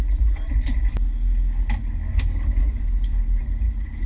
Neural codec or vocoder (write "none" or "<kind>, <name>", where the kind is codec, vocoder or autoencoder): none